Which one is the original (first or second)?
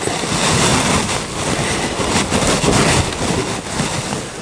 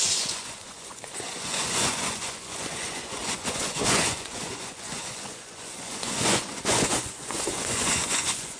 first